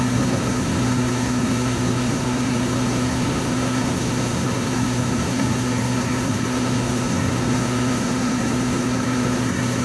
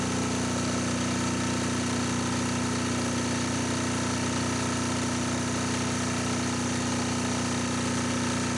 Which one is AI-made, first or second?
first